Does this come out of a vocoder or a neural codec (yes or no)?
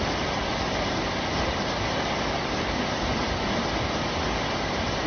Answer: no